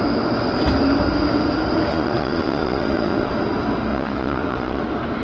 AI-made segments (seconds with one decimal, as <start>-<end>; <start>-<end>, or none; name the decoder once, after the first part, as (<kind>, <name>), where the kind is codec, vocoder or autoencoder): 1.9-3.3 (vocoder, Vocos); 3.9-4.8